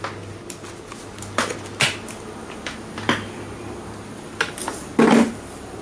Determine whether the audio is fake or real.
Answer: real